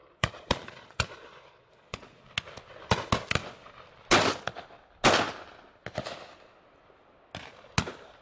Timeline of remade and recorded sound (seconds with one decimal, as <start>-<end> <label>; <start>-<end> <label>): 0.0-2.2 remade; 2.2-8.2 recorded